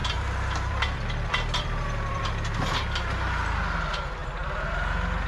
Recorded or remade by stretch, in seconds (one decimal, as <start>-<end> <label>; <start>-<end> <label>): 0.0-2.3 remade; 2.3-5.3 recorded